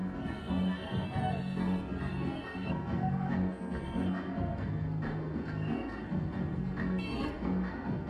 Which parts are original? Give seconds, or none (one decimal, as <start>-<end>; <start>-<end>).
none